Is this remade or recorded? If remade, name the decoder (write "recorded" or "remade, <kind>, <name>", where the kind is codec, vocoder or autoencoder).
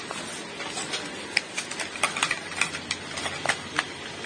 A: recorded